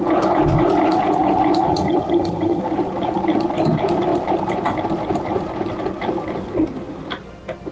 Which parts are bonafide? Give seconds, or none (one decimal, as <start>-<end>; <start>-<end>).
0.0-1.7; 2.6-7.7